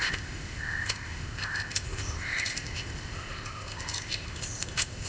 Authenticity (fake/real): fake